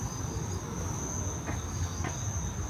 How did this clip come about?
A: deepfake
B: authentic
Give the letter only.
B